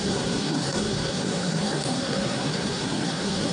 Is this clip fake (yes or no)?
yes